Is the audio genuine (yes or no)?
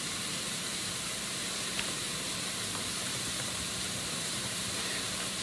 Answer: no